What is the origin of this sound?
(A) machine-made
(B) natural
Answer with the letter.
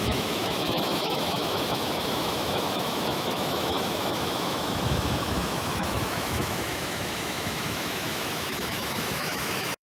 A